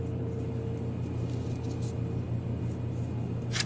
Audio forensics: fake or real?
real